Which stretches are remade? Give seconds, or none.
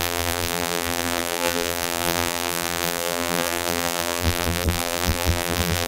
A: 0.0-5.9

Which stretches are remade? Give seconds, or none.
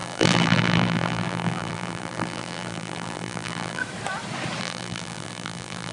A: 0.0-3.8; 4.6-5.9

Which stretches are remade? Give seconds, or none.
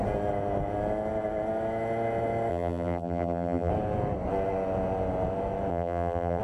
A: 2.5-3.7; 5.7-6.4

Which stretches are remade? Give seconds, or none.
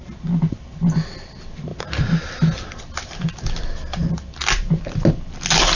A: none